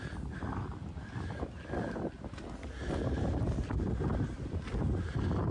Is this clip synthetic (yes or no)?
no